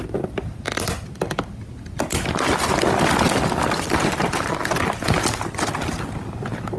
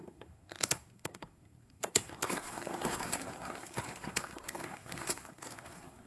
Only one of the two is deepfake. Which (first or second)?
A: second